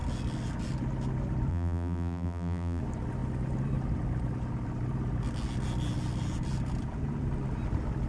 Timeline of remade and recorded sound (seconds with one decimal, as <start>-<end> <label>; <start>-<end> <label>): 0.0-1.5 recorded; 1.5-2.8 remade; 2.8-8.1 recorded

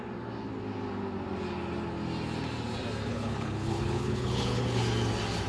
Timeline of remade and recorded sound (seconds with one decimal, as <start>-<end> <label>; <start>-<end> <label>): 0.0-3.1 recorded; 3.1-4.8 remade; 4.8-5.5 recorded